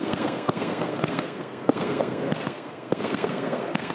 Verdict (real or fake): fake